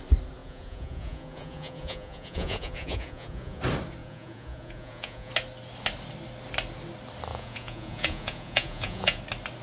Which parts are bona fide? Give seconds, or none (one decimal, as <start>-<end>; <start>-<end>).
0.0-0.4; 3.6-4.0; 5.3-7.3; 9.2-9.6